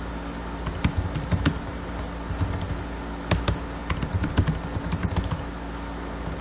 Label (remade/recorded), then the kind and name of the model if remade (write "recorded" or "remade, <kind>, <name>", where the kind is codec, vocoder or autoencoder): recorded